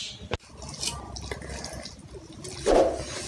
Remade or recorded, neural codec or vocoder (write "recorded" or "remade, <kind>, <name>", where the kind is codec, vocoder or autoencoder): recorded